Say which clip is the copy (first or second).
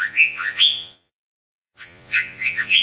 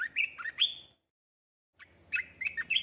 first